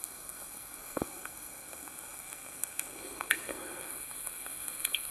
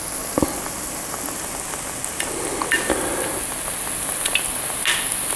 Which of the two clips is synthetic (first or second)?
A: first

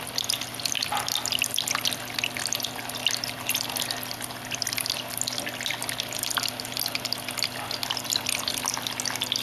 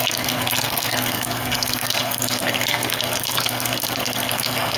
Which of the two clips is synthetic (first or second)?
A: second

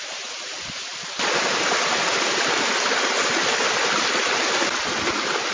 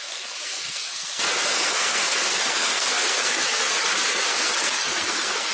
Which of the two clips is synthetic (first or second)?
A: second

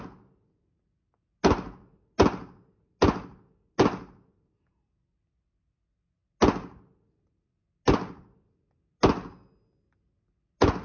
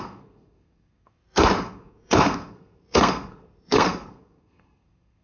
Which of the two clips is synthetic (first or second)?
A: second